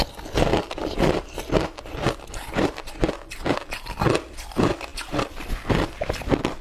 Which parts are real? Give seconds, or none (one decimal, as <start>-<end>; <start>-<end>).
0.0-0.5; 4.5-4.9